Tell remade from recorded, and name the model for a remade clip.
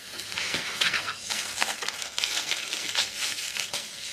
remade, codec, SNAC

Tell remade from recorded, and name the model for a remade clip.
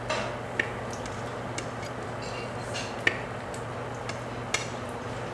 recorded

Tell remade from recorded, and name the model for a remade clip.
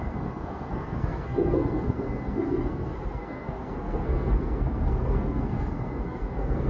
remade, codec, SNAC